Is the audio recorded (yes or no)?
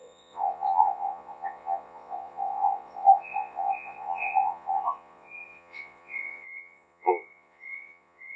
no